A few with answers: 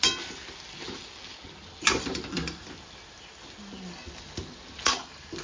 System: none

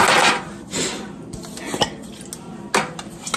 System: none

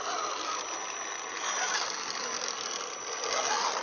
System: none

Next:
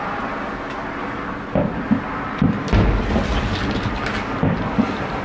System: none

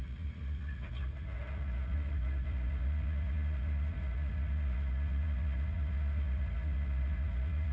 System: vocoder, Vocos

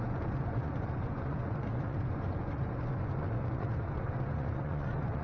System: vocoder, Vocos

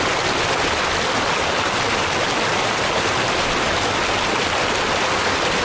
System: none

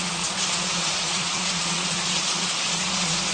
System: vocoder, Vocos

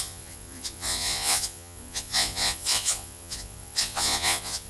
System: vocoder, Vocos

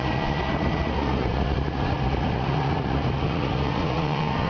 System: vocoder, Vocos